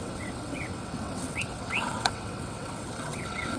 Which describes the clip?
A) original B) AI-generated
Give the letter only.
B